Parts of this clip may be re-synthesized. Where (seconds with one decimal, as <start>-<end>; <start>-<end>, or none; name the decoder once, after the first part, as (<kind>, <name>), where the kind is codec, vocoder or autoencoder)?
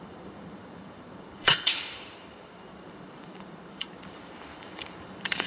0.0-5.5 (vocoder, BigVGAN v2)